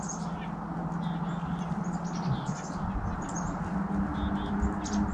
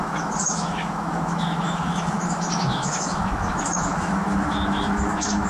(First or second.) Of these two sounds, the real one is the first